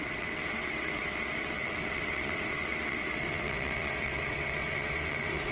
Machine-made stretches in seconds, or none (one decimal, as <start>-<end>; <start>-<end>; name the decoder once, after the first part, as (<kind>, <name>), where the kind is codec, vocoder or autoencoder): 0.0-5.5 (vocoder, WaveNeXt)

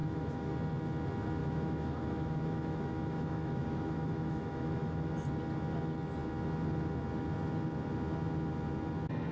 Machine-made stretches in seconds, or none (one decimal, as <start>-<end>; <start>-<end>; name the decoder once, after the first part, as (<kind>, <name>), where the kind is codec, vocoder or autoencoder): 0.0-0.5 (autoencoder, DAC-VAE); 1.4-5.1

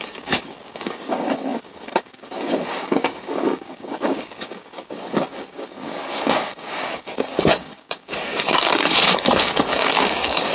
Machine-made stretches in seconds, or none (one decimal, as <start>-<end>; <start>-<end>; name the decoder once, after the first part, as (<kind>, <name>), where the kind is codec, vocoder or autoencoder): 0.0-10.5 (codec, DAC)